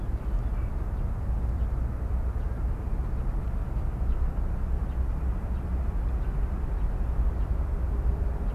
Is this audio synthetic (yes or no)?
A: no